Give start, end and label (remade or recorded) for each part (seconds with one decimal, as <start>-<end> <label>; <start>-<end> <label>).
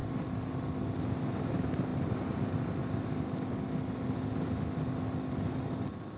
0.0-6.2 recorded